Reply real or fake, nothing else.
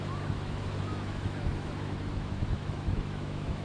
fake